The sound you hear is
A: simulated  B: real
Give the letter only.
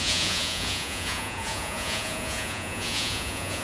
A